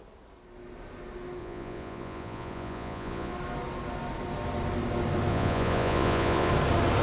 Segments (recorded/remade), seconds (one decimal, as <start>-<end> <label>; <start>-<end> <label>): 0.0-1.4 recorded; 1.4-3.3 remade; 3.3-5.3 recorded; 5.3-6.5 remade; 6.5-7.0 recorded